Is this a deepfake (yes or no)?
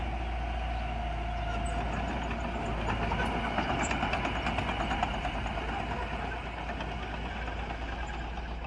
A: no